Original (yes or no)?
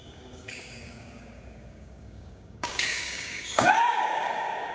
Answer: no